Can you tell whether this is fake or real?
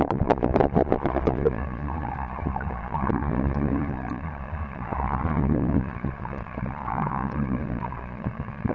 fake